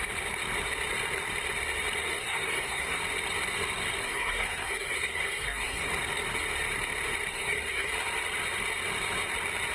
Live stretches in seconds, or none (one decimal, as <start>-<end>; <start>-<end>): 0.0-2.0; 3.0-4.0; 5.9-7.3; 7.9-9.7